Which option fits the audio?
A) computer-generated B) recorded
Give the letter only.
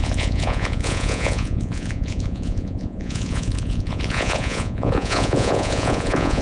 A